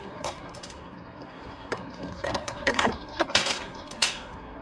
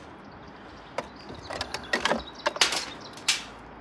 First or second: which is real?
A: second